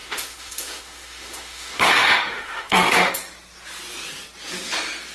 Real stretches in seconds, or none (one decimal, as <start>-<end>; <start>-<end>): 3.1-5.1